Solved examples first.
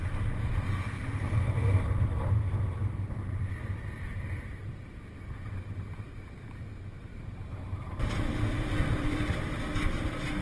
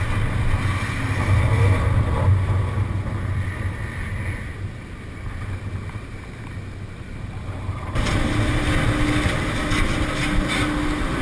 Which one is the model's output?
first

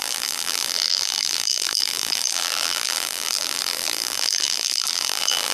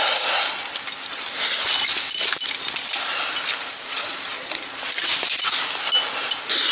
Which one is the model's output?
first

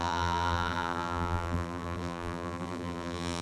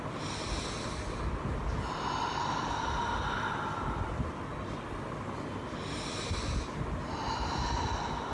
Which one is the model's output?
first